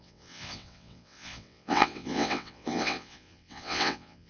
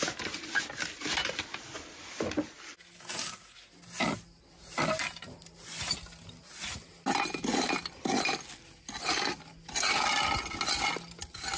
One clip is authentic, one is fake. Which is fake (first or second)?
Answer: first